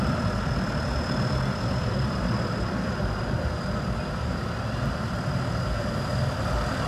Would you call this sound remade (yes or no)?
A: yes